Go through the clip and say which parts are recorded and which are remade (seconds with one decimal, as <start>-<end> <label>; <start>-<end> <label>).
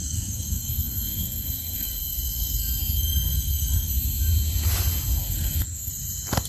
0.0-3.9 remade; 3.9-5.2 recorded; 5.2-5.9 remade; 5.9-6.5 recorded